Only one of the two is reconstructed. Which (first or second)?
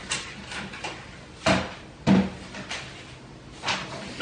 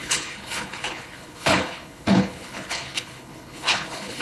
second